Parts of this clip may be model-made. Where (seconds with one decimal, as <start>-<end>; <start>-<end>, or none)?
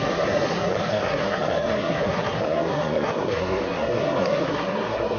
0.0-5.2